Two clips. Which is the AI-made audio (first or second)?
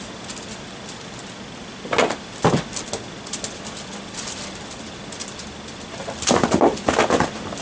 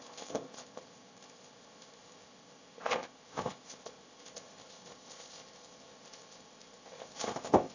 second